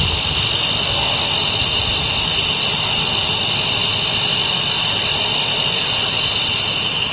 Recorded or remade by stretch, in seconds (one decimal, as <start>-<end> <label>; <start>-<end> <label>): 0.0-7.1 recorded